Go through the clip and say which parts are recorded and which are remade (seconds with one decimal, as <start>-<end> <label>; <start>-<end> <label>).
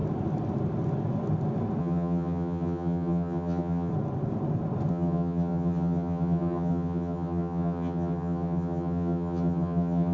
0.0-1.8 recorded; 1.8-3.9 remade; 3.9-4.9 recorded; 4.9-10.1 remade